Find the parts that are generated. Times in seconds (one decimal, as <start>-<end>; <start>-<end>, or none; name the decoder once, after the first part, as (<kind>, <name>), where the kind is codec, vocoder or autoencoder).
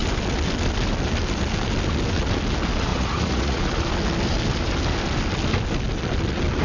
2.9-3.6 (vocoder, Vocos)